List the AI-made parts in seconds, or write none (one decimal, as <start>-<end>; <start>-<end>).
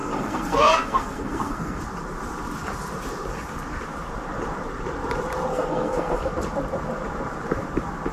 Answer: 0.0-1.8; 5.5-6.3